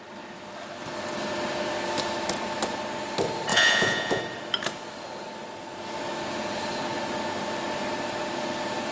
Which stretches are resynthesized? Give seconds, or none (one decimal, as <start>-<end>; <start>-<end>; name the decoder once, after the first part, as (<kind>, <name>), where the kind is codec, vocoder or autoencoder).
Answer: 3.5-4.2 (vocoder, Vocos)